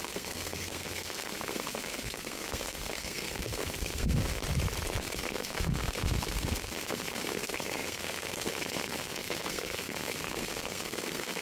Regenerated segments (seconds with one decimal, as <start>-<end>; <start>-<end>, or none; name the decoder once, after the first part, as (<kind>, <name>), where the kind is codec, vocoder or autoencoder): 0.0-4.4 (codec, SNAC); 5.0-11.4